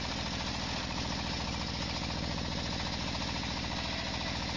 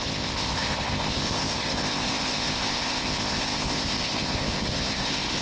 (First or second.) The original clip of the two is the first